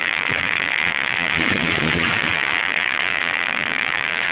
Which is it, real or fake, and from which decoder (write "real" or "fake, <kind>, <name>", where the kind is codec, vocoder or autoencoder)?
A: fake, vocoder, Vocos